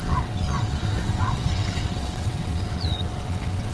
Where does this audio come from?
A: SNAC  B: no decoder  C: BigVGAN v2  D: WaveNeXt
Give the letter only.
D